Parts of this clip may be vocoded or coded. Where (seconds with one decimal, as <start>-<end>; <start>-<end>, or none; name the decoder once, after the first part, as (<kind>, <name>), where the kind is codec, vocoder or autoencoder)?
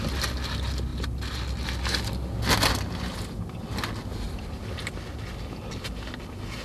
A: none